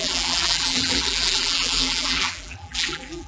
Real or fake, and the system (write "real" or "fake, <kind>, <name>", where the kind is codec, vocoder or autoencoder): fake, vocoder, BigVGAN v2